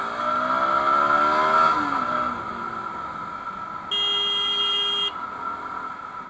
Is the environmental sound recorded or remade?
recorded